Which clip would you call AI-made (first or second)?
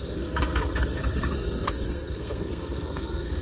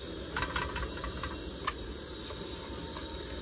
first